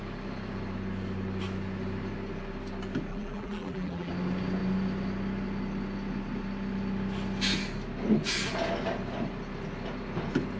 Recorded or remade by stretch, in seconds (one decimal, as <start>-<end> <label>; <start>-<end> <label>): 0.0-3.1 recorded; 3.1-4.1 remade; 4.1-10.6 recorded